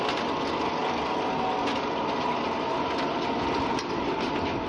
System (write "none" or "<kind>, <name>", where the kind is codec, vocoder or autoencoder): none